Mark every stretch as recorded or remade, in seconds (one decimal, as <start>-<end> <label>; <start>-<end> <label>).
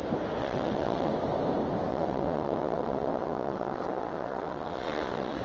0.0-0.4 recorded; 0.4-1.1 remade; 1.1-1.9 recorded; 1.9-5.4 remade